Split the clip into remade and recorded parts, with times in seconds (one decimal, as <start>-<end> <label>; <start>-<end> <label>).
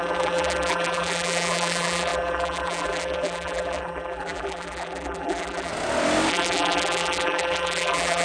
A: 0.0-5.7 remade; 5.7-6.3 recorded; 6.3-8.2 remade